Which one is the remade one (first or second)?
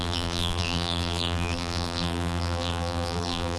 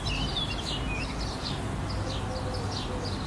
first